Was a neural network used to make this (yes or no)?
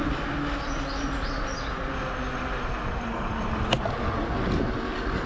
no